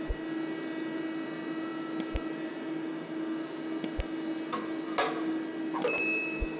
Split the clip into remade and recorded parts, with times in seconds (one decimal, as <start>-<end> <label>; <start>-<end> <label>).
0.0-6.6 recorded